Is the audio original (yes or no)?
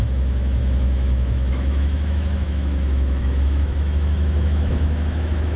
no